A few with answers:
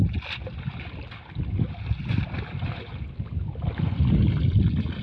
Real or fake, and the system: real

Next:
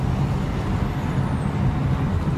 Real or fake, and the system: real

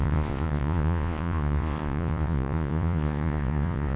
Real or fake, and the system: fake, vocoder, Vocos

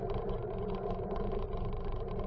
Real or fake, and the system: real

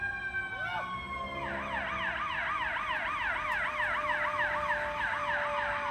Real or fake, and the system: real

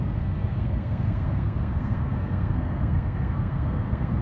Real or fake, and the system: fake, codec, SNAC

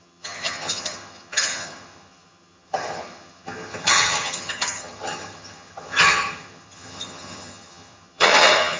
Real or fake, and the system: fake, vocoder, HiFi-GAN